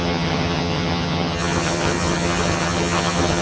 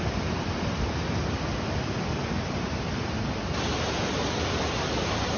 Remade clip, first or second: first